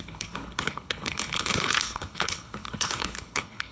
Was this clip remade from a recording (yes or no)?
yes